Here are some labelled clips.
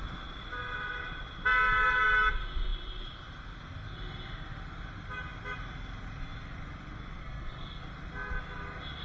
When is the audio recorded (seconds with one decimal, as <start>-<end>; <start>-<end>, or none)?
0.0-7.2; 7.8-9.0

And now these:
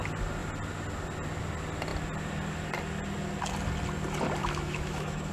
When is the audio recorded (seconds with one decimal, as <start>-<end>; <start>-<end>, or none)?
0.0-4.4

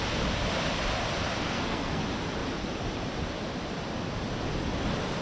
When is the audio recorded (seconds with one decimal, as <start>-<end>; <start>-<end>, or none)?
0.0-1.4; 2.0-5.2